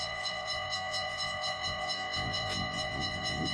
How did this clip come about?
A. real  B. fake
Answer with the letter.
B